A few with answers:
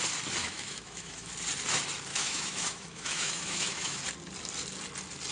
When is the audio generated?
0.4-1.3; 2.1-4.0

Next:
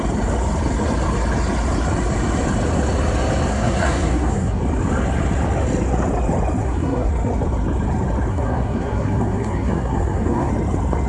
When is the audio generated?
3.5-4.6; 6.6-7.1; 8.3-10.5

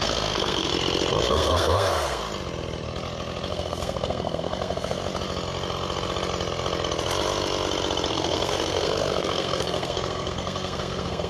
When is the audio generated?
0.0-0.7; 1.3-2.2; 3.5-5.0; 8.1-11.3